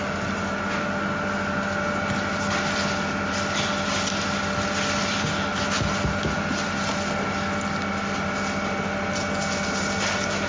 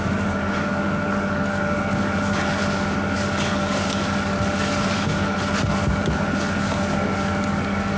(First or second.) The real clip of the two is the first